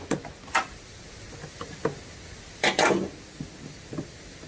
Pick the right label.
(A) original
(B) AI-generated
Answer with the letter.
A